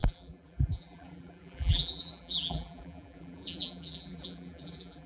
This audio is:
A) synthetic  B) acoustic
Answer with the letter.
A